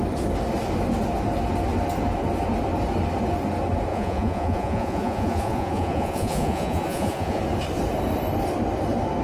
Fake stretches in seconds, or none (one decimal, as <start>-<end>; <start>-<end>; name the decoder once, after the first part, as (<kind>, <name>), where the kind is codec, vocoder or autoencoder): 3.9-7.4 (vocoder, Vocos)